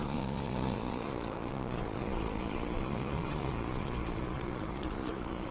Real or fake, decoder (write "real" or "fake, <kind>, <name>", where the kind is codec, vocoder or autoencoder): fake, vocoder, Vocos